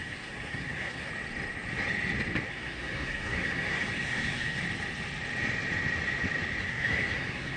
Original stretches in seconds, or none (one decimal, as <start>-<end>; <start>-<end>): 1.1-2.5; 4.6-6.6